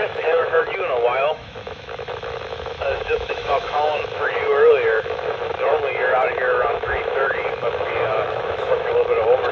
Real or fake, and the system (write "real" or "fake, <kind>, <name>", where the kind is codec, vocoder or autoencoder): fake, autoencoder, DAC-VAE